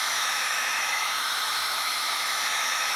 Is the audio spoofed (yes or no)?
yes